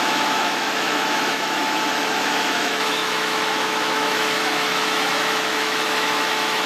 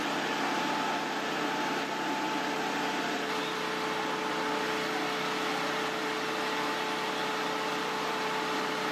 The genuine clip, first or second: second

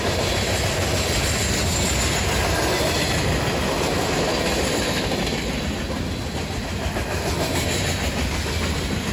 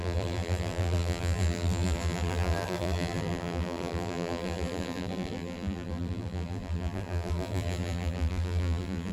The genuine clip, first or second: first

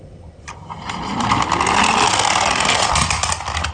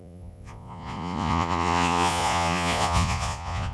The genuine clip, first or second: first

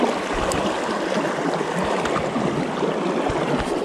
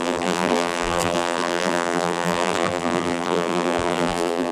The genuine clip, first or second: first